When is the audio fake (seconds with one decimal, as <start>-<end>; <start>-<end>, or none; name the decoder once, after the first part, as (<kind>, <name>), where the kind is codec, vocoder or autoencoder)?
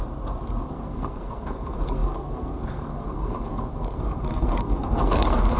0.7-5.6 (codec, SNAC)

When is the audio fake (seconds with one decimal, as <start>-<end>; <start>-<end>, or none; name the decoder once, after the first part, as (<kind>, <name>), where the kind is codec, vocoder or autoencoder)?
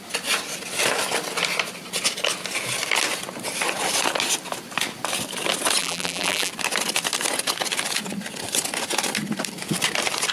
5.8-6.5 (vocoder, BigVGAN v2)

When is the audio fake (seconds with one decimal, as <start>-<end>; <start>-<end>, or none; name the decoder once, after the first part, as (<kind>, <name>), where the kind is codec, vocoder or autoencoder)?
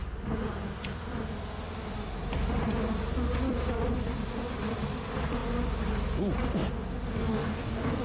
7.2-8.0 (codec, DAC)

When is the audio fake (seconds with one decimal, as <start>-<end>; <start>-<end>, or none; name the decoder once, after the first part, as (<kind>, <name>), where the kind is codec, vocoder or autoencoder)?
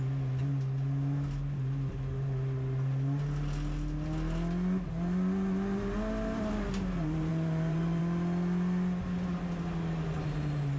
7.3-8.0 (vocoder, Vocos)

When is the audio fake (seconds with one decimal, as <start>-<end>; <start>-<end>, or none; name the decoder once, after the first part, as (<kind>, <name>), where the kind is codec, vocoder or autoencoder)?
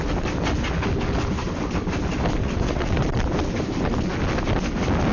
2.4-3.0 (vocoder, WaveNeXt)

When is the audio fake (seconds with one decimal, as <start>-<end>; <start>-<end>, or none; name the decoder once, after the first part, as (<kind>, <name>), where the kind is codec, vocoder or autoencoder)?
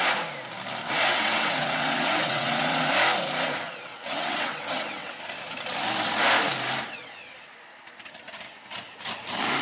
1.1-2.9 (vocoder, WaveNeXt); 3.9-5.1